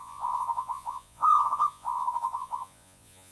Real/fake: fake